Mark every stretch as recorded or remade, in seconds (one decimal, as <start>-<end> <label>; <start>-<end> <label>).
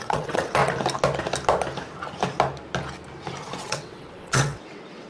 0.0-0.6 remade; 0.6-3.6 recorded; 3.6-5.1 remade